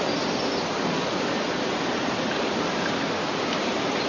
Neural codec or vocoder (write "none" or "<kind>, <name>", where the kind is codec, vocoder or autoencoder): none